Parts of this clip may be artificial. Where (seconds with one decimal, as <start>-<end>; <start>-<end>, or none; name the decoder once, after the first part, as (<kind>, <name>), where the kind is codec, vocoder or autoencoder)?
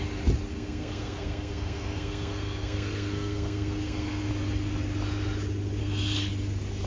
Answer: 0.5-4.3 (codec, SNAC); 5.8-6.3